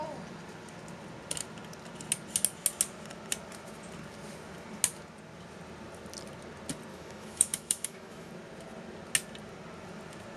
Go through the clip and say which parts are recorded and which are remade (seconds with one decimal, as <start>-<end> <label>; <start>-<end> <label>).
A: 0.0-6.9 recorded; 6.9-8.3 remade; 8.3-10.4 recorded